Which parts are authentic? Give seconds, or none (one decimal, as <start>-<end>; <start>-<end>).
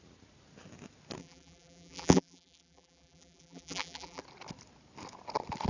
0.0-1.2; 4.2-5.7